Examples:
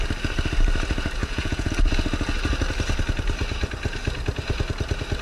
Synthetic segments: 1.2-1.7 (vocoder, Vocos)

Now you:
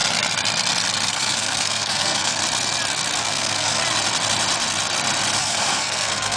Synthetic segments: 1.1-2.4 (codec, SNAC); 3.2-3.8; 5.4-6.4